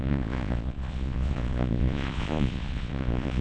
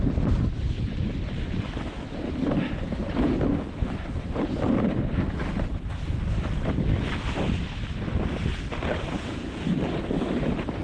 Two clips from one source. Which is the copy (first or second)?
first